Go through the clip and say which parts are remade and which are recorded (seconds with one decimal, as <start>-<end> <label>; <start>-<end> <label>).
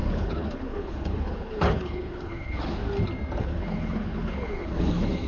0.0-2.8 remade; 2.8-3.4 recorded; 3.4-5.3 remade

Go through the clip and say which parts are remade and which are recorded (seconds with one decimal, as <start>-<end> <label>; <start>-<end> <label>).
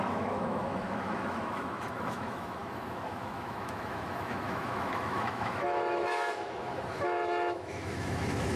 0.0-8.6 remade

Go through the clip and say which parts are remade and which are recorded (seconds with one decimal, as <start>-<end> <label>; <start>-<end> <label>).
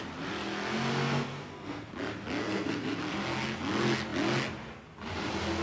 0.0-0.9 recorded; 0.9-1.9 remade; 1.9-2.4 recorded; 2.4-3.0 remade; 3.0-5.6 recorded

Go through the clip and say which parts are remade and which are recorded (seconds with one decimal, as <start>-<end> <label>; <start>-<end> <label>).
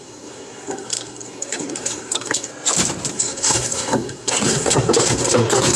0.0-2.5 remade; 2.5-3.1 recorded; 3.1-5.8 remade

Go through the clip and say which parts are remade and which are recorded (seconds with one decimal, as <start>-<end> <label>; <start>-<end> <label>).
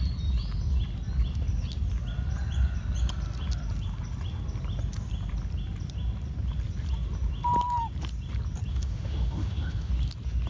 0.0-8.7 recorded; 8.7-9.9 remade; 9.9-10.5 recorded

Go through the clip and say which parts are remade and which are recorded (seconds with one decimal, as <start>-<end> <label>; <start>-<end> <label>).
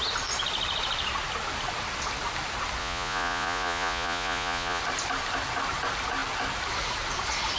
0.0-2.8 recorded; 2.8-4.8 remade; 4.8-7.6 recorded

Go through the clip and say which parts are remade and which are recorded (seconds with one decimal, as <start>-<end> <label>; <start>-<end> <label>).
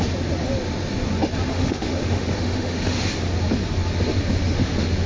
0.0-1.5 recorded; 1.5-3.1 remade; 3.1-4.4 recorded; 4.4-5.1 remade